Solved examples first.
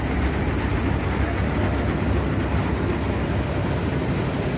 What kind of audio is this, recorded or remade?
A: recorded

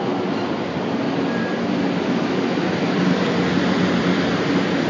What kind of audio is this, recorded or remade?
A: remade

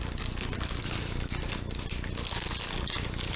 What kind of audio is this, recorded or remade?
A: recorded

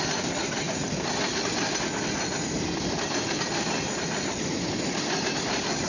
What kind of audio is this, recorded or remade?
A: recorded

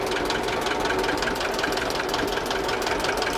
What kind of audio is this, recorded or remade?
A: recorded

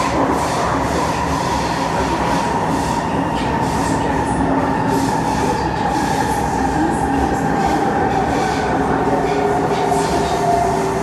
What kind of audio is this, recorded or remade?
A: recorded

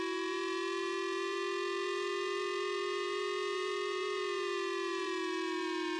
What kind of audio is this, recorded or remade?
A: remade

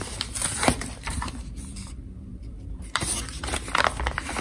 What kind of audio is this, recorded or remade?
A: remade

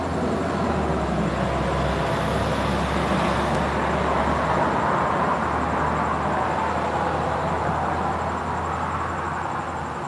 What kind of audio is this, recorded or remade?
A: recorded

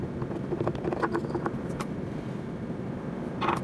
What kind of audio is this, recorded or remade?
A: recorded